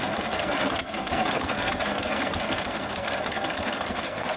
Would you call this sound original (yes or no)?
no